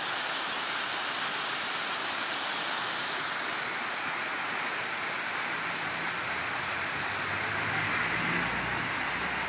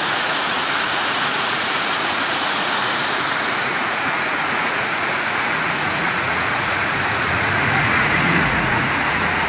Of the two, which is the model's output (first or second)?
second